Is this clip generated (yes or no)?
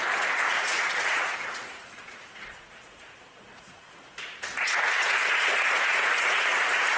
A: yes